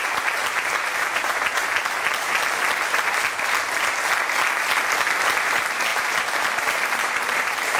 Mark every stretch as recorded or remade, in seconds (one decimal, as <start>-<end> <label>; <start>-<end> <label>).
0.0-1.6 remade; 1.6-5.4 recorded; 5.4-7.8 remade